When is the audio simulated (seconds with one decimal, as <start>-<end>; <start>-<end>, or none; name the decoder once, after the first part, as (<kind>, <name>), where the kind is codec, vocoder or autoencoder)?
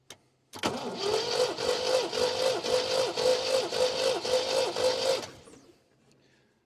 none